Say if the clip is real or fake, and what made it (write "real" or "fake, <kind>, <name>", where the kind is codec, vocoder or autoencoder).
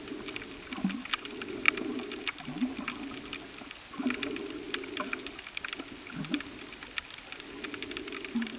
real